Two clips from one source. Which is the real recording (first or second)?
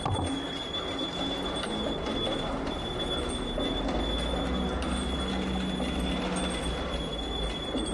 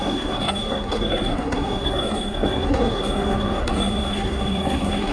first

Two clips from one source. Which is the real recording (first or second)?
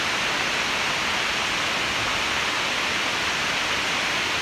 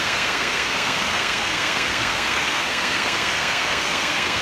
first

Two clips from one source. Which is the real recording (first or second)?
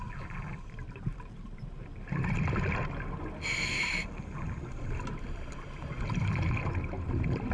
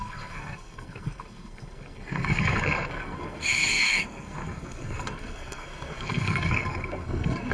first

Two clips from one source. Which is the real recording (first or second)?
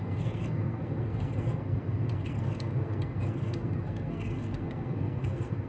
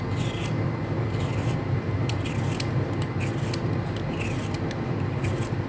second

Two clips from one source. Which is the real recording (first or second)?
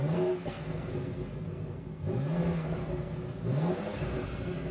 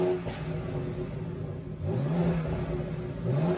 second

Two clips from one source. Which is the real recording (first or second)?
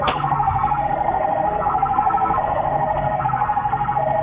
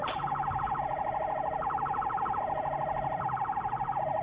second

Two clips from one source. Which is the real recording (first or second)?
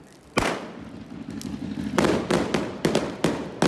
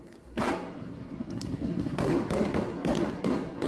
first